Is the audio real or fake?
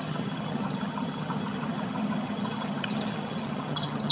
fake